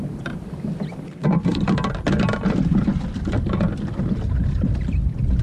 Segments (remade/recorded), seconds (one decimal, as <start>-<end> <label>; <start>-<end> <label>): 0.0-2.9 remade; 2.9-4.0 recorded; 4.0-5.4 remade